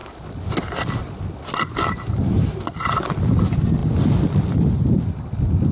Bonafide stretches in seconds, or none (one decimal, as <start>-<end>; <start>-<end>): 0.0-5.7